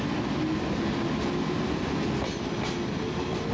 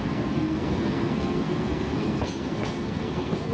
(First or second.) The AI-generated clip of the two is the second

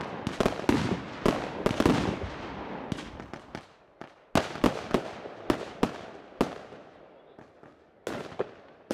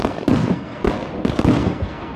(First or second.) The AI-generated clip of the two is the second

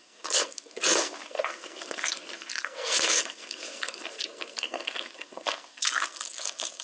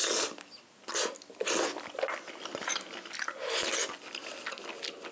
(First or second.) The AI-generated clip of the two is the first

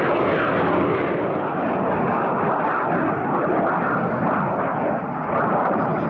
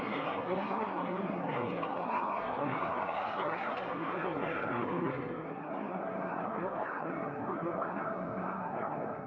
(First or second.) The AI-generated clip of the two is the second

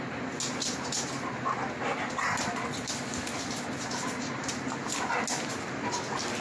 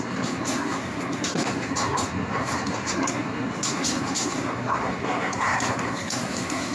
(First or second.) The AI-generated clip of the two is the second